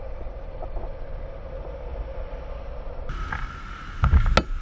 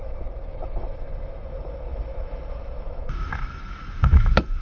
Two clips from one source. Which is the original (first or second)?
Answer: first